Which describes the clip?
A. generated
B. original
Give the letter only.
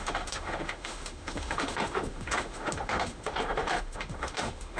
A